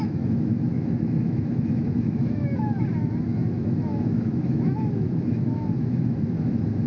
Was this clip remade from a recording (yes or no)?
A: yes